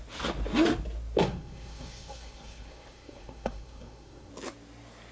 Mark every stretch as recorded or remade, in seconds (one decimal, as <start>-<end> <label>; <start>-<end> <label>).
0.0-1.2 recorded; 1.2-4.3 remade; 4.3-5.1 recorded